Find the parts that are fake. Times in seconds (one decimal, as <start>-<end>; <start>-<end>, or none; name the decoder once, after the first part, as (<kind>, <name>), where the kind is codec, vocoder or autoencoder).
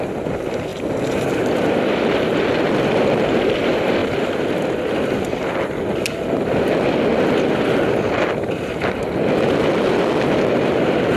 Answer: none